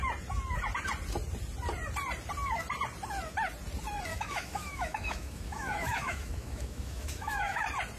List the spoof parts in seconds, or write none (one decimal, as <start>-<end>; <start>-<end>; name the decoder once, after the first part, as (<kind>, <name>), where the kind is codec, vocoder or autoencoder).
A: 4.1-7.6 (autoencoder, DAC-VAE)